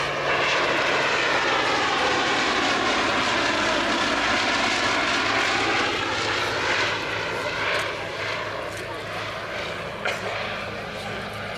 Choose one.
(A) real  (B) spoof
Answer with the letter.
A